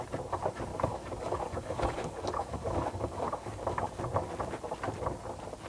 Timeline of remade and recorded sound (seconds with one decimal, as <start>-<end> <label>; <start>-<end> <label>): 0.0-0.7 recorded; 0.7-4.0 remade; 4.0-5.7 recorded